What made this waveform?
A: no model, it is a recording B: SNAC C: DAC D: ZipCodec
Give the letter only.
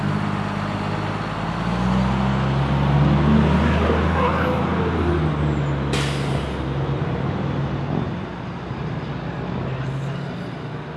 A